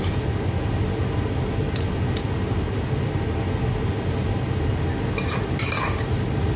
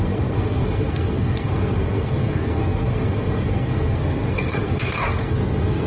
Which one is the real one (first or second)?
first